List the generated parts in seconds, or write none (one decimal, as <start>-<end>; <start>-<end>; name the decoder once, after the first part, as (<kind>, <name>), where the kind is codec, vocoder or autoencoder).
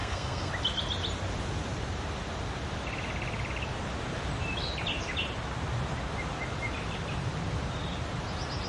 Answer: 0.0-0.5 (codec, SNAC)